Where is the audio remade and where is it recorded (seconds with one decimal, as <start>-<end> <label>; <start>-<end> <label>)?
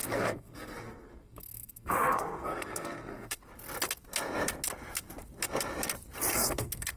0.0-3.4 remade; 3.4-6.3 recorded; 6.3-7.0 remade